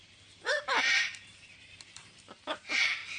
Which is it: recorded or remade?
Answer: remade